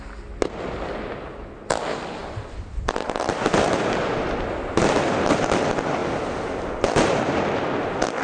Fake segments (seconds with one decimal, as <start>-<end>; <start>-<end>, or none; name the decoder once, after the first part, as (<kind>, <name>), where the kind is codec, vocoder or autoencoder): none